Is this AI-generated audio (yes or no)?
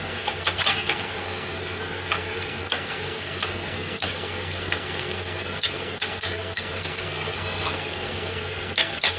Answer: yes